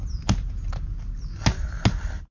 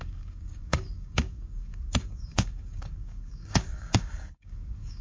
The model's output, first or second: second